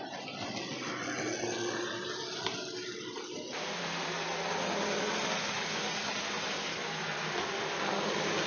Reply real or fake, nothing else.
real